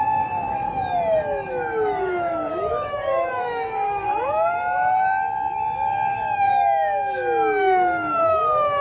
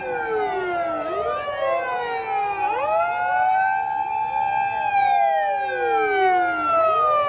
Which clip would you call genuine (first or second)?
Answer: second